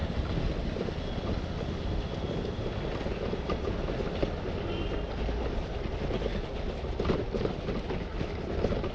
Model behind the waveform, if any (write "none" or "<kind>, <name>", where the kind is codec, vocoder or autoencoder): none